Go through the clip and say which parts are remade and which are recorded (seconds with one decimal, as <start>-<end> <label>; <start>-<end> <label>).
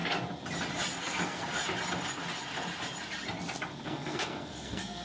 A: 0.0-1.0 recorded; 1.0-1.6 remade; 1.6-3.8 recorded; 3.8-5.0 remade